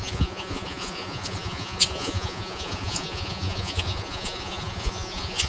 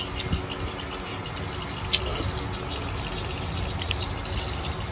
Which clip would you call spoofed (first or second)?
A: first